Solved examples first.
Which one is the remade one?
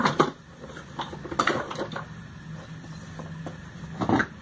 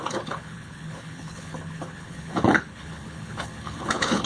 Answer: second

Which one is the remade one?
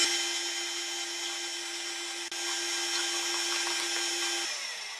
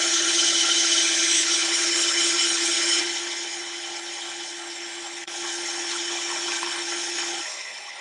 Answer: second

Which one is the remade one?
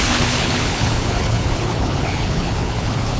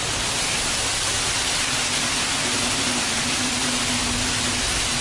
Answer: first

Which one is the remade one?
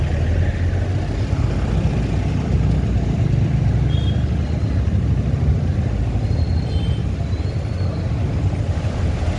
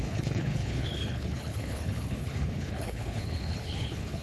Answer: second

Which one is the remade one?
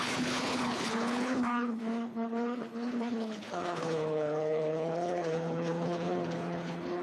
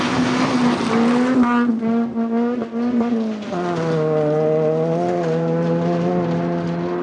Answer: first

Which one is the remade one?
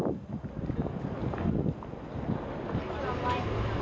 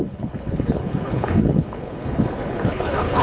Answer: second